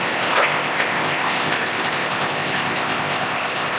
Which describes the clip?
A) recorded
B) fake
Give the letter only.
B